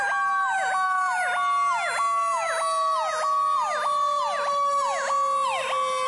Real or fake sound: real